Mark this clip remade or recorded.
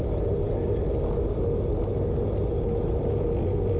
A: recorded